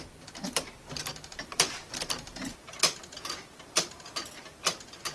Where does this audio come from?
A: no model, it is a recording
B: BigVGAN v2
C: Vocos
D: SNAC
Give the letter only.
B